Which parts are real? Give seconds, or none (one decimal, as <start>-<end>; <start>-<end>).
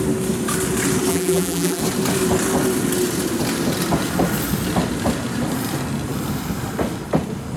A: 0.0-1.1; 1.8-7.6